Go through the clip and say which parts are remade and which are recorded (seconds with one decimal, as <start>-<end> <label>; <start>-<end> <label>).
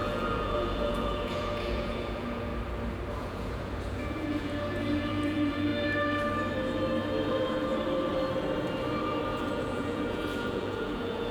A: 0.0-2.5 remade; 2.5-3.2 recorded; 3.2-5.7 remade; 5.7-7.3 recorded; 7.3-7.7 remade; 7.7-9.4 recorded; 9.4-11.3 remade